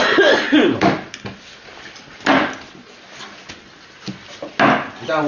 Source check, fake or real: real